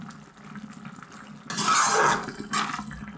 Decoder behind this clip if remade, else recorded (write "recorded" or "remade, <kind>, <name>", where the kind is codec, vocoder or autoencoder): recorded